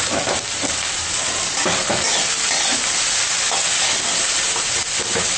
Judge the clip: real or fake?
fake